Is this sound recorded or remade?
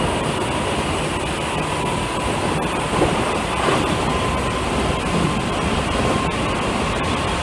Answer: recorded